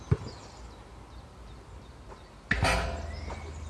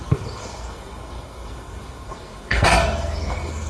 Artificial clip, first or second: second